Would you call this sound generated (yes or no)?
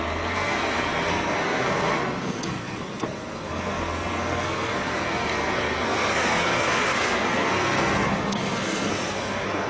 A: yes